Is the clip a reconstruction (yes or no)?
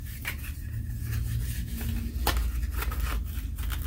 no